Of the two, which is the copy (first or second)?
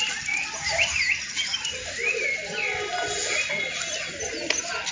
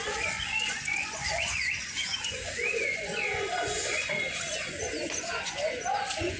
second